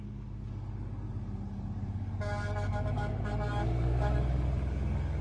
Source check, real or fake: fake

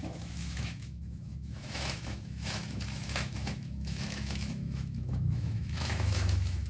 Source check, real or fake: fake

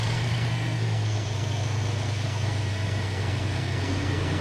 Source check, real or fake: fake